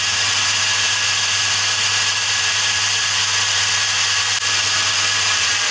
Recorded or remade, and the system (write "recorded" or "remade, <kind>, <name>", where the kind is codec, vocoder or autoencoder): recorded